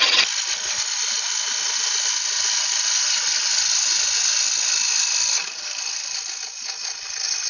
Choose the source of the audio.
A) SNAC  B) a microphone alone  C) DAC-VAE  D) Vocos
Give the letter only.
B